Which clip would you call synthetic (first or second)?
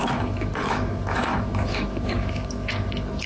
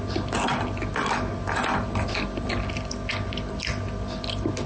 first